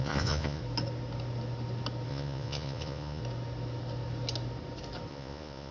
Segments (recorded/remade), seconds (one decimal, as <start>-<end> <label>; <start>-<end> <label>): 0.0-0.6 remade; 0.6-2.1 recorded; 2.1-3.2 remade; 3.2-5.1 recorded; 5.1-5.7 remade